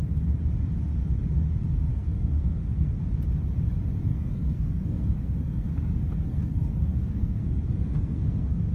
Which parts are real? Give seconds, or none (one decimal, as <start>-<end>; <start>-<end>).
0.0-1.9; 3.0-4.1